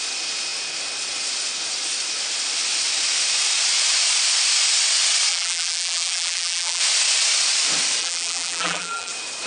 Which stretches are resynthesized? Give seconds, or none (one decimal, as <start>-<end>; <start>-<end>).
5.3-6.8; 8.0-9.1